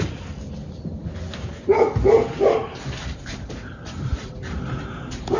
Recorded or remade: recorded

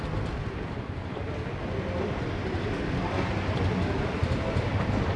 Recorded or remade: recorded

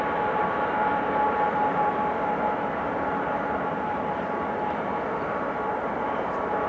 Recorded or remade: remade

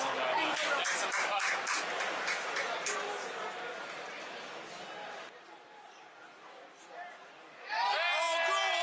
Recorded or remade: recorded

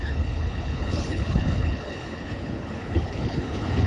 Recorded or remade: remade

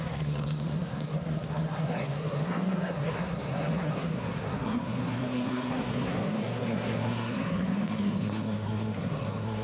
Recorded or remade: remade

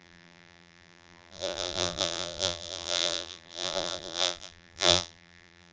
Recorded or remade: remade